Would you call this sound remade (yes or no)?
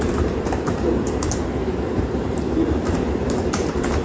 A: yes